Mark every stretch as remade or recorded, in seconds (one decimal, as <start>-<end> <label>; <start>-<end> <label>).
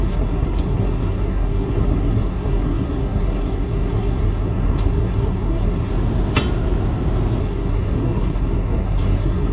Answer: 0.0-5.9 remade; 5.9-7.4 recorded; 7.4-9.5 remade